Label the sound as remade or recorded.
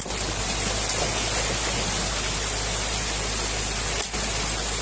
recorded